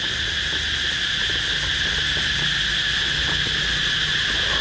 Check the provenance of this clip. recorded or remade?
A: recorded